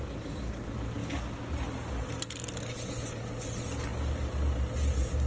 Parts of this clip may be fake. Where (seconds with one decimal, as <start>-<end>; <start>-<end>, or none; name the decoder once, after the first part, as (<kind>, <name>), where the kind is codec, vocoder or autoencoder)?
none